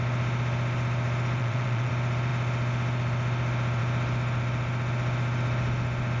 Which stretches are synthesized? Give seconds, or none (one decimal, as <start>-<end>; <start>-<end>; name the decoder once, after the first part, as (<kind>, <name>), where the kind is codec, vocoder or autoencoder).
1.4-1.9 (vocoder, WaveNeXt)